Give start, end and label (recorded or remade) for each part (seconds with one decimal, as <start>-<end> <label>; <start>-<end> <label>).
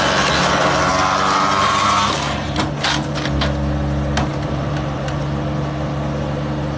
0.0-4.3 recorded; 4.3-5.2 remade; 5.2-6.8 recorded